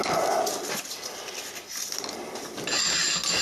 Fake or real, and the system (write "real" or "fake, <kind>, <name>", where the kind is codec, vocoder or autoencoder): real